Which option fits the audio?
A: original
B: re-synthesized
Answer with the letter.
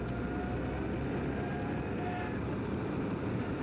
A